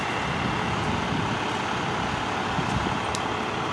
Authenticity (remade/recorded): recorded